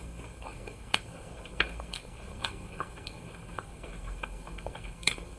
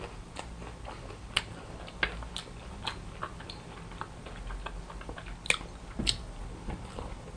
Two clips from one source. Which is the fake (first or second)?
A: first